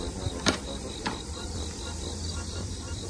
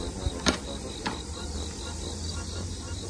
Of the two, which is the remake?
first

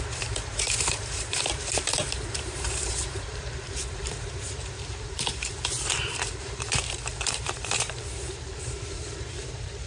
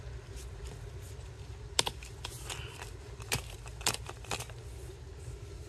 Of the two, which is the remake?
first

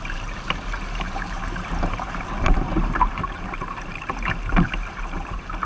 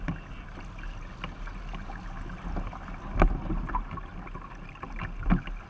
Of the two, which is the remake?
first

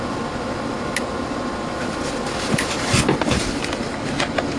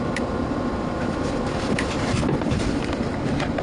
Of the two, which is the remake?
second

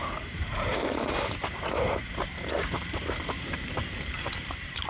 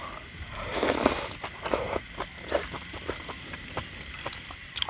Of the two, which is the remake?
first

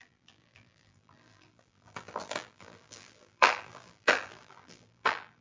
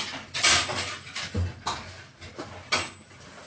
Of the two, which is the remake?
first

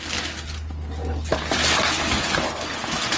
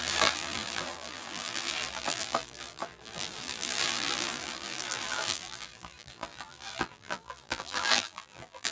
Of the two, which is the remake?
second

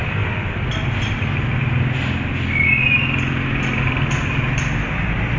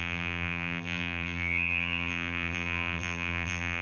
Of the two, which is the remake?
second